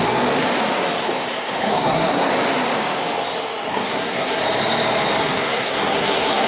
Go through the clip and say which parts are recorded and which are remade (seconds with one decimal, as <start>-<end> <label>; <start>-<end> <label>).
0.0-1.0 recorded; 1.0-2.3 remade; 2.3-3.7 recorded; 3.7-4.4 remade; 4.4-5.2 recorded; 5.2-6.5 remade